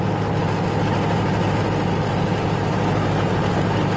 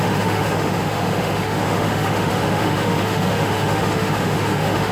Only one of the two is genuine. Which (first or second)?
first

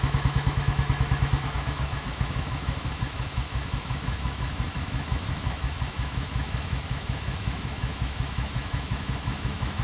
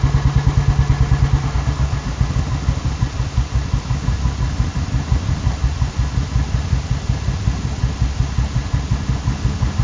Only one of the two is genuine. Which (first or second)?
second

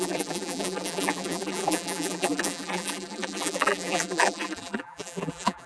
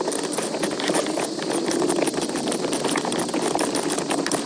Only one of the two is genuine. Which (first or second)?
second